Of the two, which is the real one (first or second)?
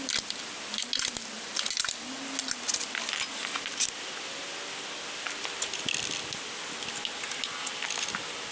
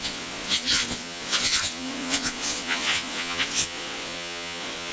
first